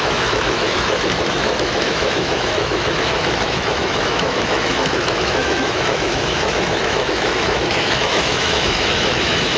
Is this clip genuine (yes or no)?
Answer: no